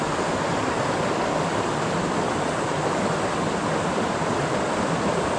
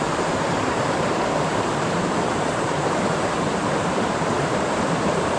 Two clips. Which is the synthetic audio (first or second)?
second